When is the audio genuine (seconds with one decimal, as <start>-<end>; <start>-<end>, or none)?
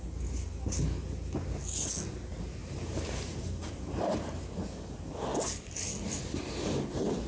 0.0-2.6; 4.4-7.3